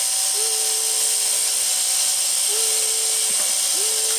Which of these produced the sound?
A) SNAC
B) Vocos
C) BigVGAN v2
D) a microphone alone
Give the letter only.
D